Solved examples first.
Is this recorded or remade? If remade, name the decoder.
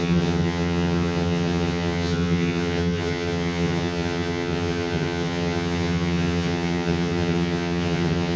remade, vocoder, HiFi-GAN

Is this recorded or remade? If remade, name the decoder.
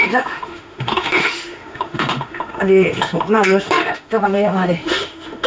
remade, autoencoder, DAC-VAE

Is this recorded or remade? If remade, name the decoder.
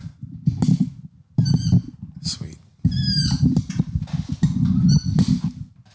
recorded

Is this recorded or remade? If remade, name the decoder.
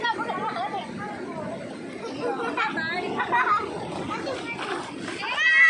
recorded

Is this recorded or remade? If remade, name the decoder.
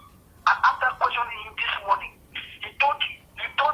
recorded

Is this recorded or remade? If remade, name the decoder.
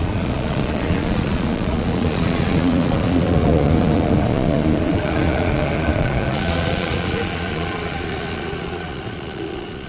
remade, vocoder, Vocos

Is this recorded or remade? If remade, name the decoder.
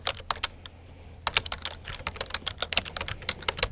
recorded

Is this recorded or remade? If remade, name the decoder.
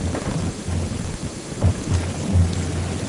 recorded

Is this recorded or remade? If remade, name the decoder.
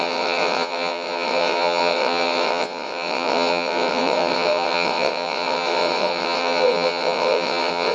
remade, vocoder, WaveNeXt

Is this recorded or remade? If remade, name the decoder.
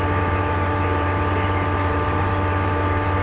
remade, vocoder, BigVGAN v2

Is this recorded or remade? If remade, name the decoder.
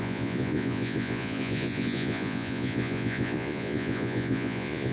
remade, vocoder, Vocos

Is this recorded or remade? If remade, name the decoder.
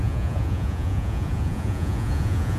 remade, vocoder, Vocos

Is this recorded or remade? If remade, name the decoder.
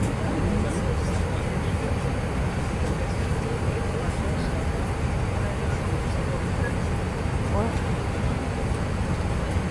recorded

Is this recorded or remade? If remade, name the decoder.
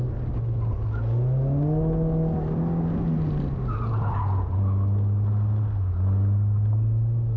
recorded